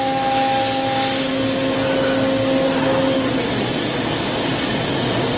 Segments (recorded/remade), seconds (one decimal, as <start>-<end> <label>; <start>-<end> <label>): 0.0-5.4 recorded